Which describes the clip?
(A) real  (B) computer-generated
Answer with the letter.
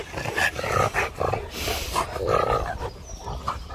B